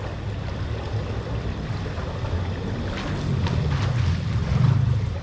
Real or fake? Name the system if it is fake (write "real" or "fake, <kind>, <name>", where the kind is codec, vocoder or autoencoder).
real